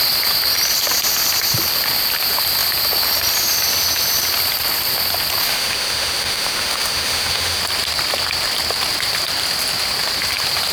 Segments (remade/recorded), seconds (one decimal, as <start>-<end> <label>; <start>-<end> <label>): 0.0-5.4 recorded; 5.4-7.6 remade; 7.6-10.7 recorded